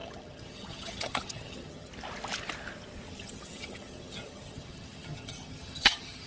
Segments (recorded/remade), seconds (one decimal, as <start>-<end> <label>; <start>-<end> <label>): 0.0-1.9 remade; 1.9-3.1 recorded; 3.1-6.3 remade